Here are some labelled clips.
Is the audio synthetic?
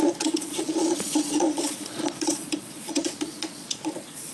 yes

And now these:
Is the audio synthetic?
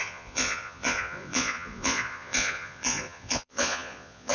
yes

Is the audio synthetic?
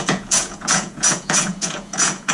yes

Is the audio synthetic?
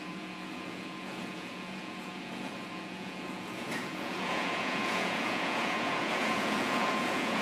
yes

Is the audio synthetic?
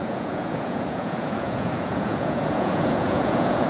yes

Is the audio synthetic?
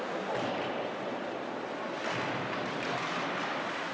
no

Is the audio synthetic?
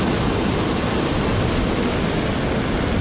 no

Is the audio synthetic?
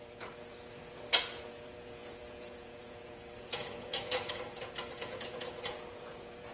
yes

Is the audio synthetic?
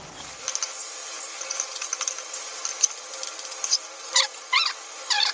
no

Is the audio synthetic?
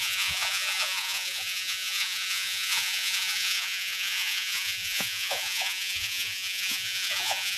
yes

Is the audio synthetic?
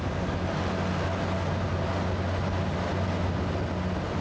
no